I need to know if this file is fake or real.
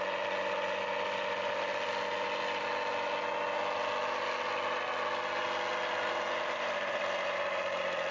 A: real